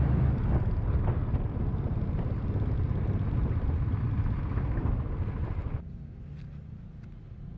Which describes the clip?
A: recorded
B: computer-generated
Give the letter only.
A